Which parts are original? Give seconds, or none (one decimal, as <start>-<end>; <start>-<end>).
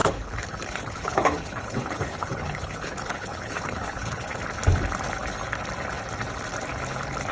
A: 4.4-7.3